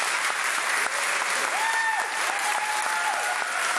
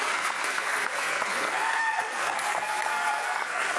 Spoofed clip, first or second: second